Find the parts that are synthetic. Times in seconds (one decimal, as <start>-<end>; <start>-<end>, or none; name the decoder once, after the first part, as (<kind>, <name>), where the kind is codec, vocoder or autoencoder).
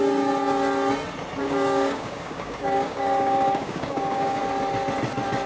1.4-4.4 (codec, DAC)